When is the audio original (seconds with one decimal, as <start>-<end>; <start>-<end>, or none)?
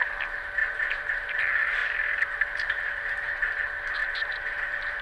0.0-0.6; 1.4-1.8; 3.4-4.0